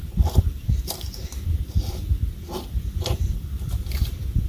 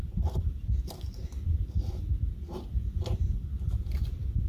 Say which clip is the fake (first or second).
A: first